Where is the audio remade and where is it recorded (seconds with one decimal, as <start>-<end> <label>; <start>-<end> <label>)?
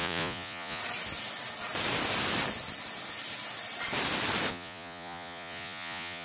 0.0-0.8 remade; 0.8-4.5 recorded; 4.5-6.2 remade